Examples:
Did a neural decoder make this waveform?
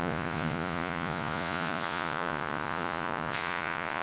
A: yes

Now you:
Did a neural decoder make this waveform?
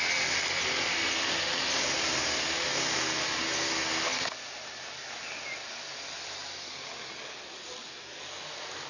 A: no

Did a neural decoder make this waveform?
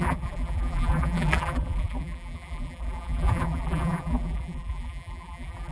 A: yes